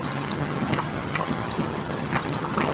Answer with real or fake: fake